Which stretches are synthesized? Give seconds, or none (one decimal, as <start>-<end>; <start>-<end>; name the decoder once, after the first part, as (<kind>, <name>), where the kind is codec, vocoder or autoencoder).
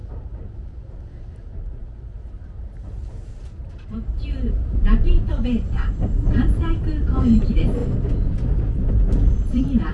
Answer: 0.0-7.8 (vocoder, BigVGAN v2); 8.9-9.9